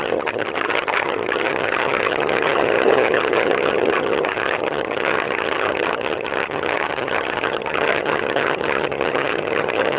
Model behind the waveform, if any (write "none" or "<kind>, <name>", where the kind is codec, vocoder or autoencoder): vocoder, HiFi-GAN